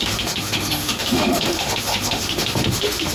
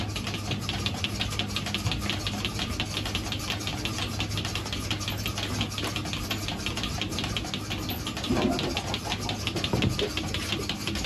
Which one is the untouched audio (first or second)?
second